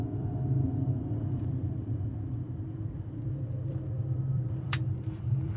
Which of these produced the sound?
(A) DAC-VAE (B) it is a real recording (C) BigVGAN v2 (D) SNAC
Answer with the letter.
C